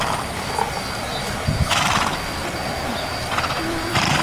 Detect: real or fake fake